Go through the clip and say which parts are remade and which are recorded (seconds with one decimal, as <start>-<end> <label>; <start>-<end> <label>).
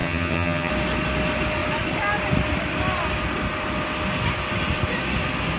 0.0-0.7 remade; 0.7-5.6 recorded